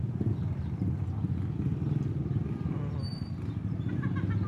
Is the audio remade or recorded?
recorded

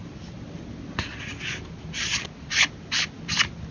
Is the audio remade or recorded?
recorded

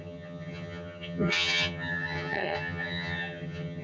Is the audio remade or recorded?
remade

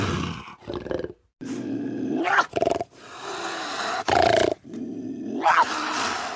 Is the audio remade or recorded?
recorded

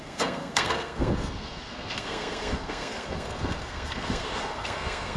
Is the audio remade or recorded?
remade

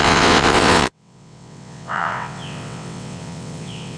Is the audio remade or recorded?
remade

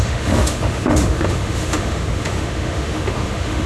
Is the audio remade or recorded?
remade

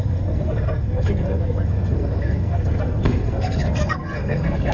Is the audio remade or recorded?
remade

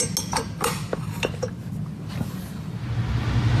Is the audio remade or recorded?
recorded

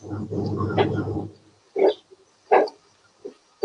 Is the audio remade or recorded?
recorded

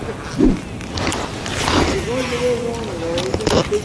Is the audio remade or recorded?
recorded